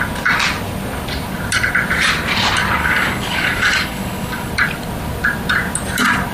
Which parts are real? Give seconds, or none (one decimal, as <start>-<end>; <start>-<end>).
0.0-2.8; 4.5-6.3